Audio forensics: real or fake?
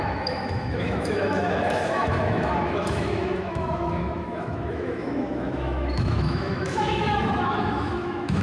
fake